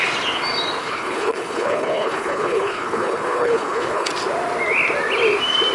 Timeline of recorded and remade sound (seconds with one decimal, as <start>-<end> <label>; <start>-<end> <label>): 0.0-0.8 recorded; 0.8-4.1 remade; 4.1-5.7 recorded